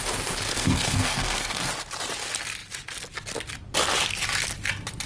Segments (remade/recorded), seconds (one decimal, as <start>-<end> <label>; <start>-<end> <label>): 0.0-0.5 recorded; 0.5-1.7 remade; 1.7-5.1 recorded